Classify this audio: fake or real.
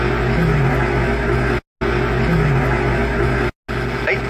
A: real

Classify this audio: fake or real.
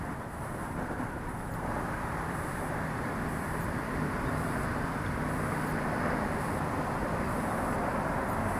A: fake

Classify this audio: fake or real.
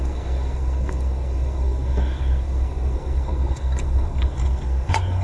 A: fake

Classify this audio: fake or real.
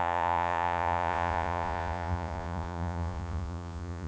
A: fake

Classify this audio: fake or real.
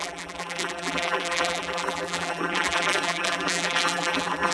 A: fake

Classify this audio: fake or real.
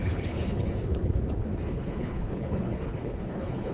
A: fake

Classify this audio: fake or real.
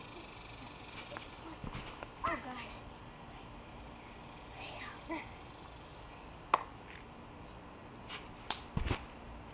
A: real